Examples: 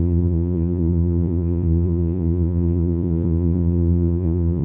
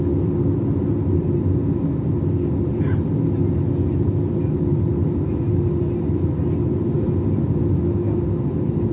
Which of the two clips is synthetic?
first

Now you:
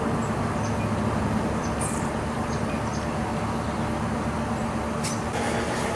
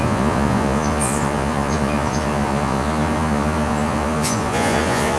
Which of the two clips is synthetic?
second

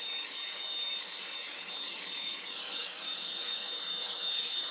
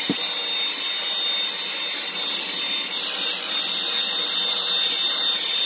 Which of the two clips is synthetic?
first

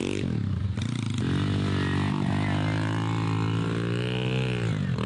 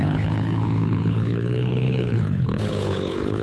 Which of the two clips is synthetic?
second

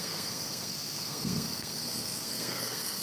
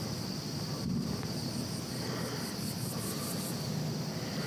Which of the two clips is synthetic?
first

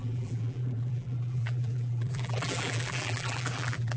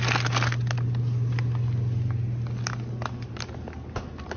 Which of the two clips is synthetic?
first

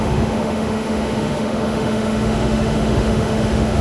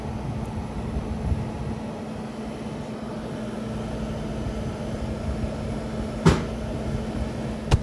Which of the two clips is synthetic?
first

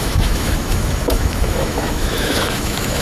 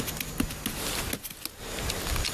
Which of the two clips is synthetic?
first